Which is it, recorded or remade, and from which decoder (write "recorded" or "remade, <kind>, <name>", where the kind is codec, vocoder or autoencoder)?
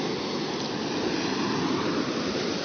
recorded